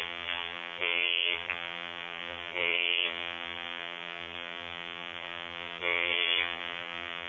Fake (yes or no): yes